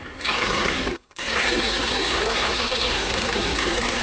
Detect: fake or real fake